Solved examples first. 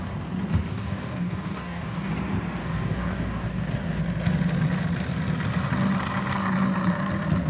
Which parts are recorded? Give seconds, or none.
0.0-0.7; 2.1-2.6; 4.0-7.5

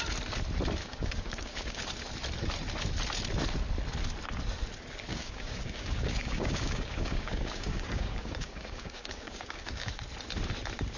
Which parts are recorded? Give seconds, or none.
0.0-0.8; 1.8-5.1; 10.0-11.0

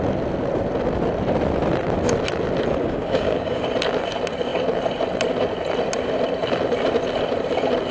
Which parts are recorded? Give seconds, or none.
0.0-2.8; 3.6-7.9

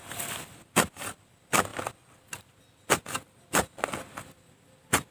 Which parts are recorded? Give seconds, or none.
0.0-5.1

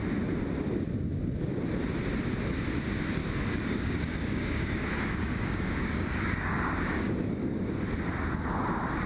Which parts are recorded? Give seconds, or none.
0.0-3.2; 7.8-9.1

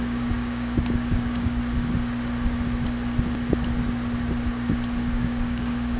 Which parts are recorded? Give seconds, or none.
1.6-5.0

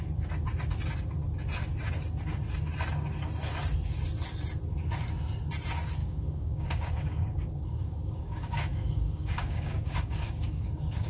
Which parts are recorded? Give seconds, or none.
0.0-6.0

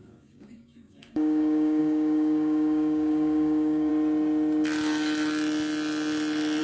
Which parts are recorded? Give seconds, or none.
3.9-6.6